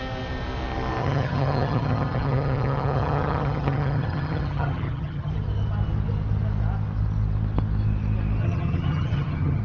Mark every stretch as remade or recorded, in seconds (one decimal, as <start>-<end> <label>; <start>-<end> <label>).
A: 0.0-1.0 recorded; 1.0-5.3 remade; 5.3-8.4 recorded; 8.4-9.6 remade